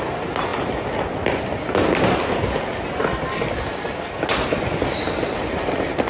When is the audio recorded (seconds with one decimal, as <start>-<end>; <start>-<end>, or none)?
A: 0.0-6.1